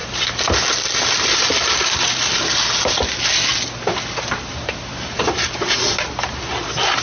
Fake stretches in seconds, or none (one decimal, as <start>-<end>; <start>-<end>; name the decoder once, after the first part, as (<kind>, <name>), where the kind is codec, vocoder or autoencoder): none